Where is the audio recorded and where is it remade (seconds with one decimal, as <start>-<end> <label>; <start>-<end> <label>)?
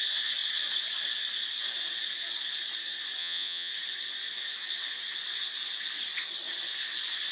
0.0-3.2 recorded; 3.2-3.7 remade; 3.7-7.3 recorded